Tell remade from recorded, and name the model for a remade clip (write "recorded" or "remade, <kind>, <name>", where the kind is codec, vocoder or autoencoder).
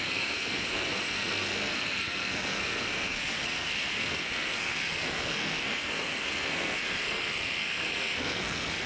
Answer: remade, codec, SNAC